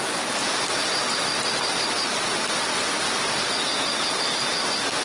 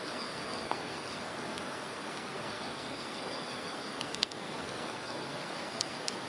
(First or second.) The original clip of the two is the first